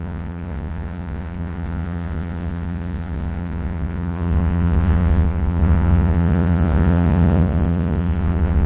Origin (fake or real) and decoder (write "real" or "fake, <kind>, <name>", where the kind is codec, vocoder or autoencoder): fake, vocoder, Vocos